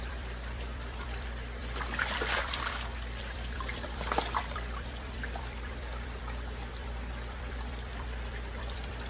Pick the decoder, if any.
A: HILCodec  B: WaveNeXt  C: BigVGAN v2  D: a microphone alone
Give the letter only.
C